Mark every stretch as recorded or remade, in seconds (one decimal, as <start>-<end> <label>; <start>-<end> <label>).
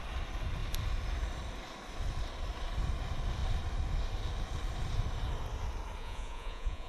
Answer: 0.0-6.0 recorded; 6.0-6.9 remade